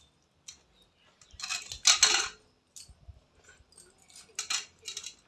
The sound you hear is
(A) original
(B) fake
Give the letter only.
A